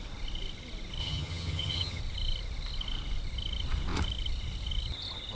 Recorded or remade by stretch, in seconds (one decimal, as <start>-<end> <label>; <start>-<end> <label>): 0.0-1.0 recorded; 1.0-2.0 remade; 2.0-5.4 recorded